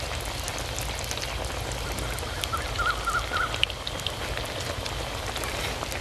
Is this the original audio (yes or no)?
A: yes